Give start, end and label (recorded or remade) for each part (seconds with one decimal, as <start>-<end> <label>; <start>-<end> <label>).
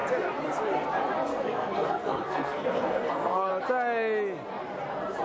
0.0-1.3 recorded; 1.3-3.5 remade; 3.5-5.2 recorded